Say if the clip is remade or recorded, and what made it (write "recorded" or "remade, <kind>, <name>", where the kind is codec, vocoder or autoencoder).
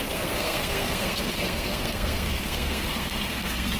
remade, codec, SNAC